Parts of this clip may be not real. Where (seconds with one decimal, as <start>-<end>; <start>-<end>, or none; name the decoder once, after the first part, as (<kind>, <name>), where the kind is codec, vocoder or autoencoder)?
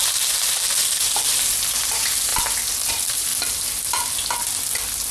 0.0-2.3 (vocoder, BigVGAN v2); 2.9-3.3